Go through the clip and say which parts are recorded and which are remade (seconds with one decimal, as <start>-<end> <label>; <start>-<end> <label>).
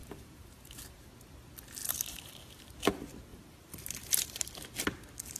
0.0-1.1 remade; 1.1-1.8 recorded; 1.8-2.7 remade; 2.7-3.3 recorded; 3.3-4.7 remade; 4.7-5.4 recorded